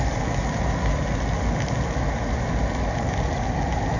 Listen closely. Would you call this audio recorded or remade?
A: recorded